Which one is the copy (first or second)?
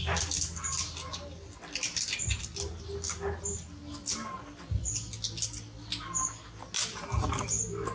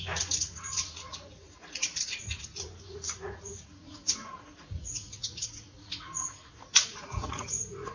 second